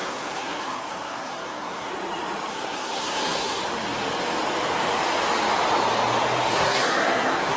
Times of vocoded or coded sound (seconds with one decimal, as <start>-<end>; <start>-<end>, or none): 0.0-1.9; 2.5-3.6; 6.5-7.6